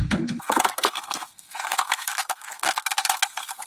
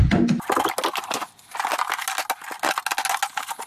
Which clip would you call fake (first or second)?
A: first